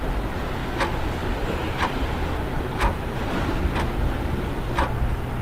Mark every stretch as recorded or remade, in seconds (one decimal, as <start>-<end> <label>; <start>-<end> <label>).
0.0-0.6 recorded; 0.6-3.5 remade; 3.5-5.4 recorded